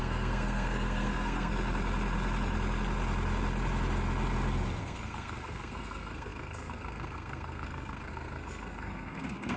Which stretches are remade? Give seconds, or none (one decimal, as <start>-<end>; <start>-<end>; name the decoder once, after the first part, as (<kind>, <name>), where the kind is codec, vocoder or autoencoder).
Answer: 0.0-1.5 (codec, SNAC); 4.8-9.6